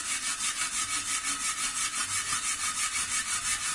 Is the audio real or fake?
real